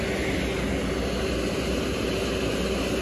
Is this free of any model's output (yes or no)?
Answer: yes